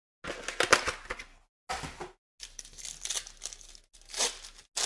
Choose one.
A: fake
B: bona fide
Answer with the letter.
B